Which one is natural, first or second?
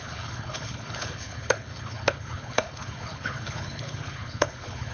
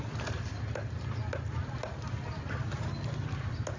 second